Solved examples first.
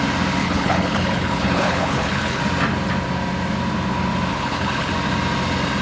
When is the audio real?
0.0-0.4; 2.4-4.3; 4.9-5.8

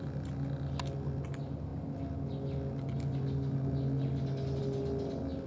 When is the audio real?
0.0-5.5

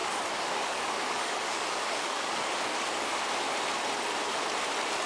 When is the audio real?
3.1-5.1

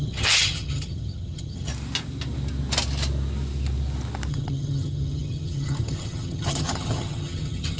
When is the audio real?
1.7-4.3

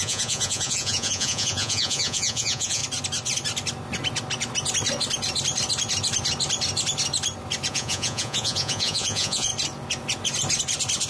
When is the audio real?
2.8-7.7; 9.5-11.1

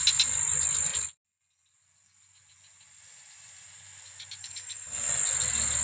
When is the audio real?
0.0-4.4; 5.1-5.8